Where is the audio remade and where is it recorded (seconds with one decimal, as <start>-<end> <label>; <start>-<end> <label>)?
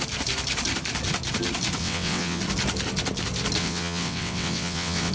0.0-1.8 recorded; 1.8-2.4 remade; 2.4-3.6 recorded; 3.6-5.1 remade